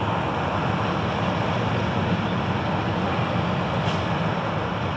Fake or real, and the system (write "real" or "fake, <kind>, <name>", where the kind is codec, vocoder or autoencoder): real